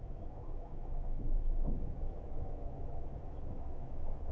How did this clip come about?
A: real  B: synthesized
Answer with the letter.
B